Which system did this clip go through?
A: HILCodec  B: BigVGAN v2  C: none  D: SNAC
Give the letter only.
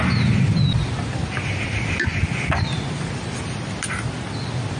C